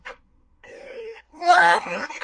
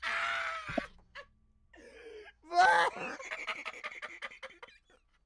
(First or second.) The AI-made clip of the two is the first